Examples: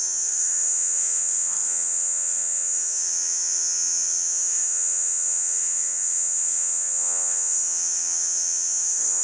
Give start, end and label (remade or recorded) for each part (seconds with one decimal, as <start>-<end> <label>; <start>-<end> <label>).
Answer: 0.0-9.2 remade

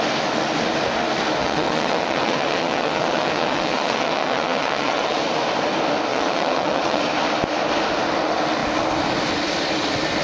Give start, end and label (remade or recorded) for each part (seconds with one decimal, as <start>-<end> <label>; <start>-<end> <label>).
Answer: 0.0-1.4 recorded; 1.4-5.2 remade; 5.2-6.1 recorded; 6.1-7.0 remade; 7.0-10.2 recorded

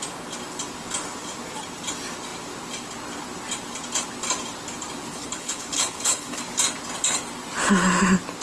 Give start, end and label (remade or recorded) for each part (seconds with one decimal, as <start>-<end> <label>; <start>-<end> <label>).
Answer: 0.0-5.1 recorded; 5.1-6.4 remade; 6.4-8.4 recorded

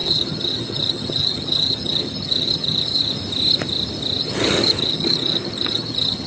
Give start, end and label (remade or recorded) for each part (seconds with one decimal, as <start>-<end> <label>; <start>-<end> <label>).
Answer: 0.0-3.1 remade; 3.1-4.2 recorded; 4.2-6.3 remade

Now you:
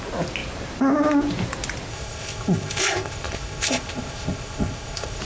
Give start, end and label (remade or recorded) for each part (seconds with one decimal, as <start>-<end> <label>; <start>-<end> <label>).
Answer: 0.0-1.9 recorded; 1.9-5.2 remade